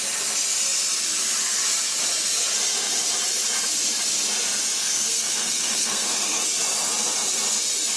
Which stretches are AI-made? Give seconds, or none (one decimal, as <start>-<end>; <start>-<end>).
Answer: 4.8-6.4